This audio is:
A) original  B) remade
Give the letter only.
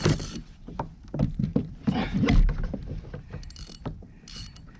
B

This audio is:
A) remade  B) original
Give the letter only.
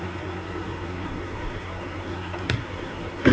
A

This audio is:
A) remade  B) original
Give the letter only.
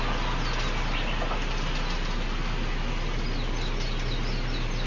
B